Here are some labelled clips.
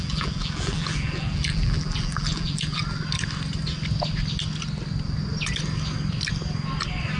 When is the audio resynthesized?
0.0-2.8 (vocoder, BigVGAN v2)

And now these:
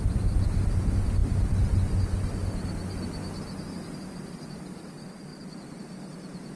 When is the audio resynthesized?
0.0-1.2 (vocoder, BigVGAN v2); 4.0-6.6

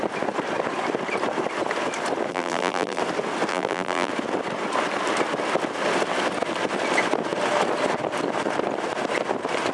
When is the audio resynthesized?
2.3-3.0 (vocoder, BigVGAN v2); 3.5-4.1

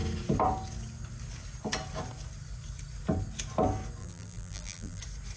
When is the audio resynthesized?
4.0-5.0 (vocoder, BigVGAN v2)